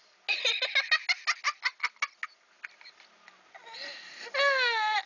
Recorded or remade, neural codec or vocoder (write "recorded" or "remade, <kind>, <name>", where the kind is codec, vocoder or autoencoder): recorded